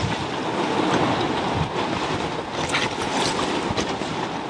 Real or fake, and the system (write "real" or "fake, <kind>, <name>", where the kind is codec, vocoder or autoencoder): real